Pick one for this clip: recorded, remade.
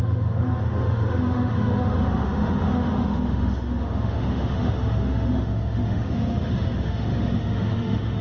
remade